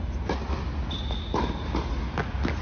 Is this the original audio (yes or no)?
yes